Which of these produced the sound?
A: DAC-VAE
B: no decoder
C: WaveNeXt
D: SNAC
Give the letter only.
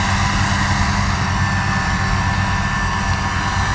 B